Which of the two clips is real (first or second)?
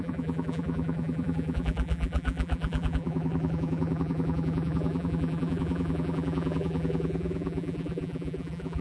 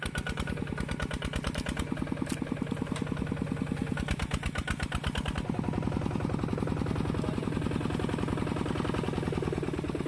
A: second